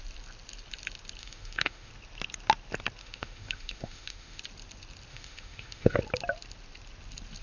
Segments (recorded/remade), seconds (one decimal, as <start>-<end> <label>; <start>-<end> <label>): 0.0-1.2 recorded; 1.2-1.9 remade; 1.9-3.0 recorded; 3.0-4.4 remade; 4.4-5.1 recorded; 5.1-6.0 remade; 6.0-7.4 recorded